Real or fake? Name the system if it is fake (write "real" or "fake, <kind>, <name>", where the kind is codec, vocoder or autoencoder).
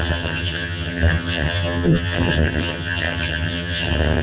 fake, vocoder, HiFi-GAN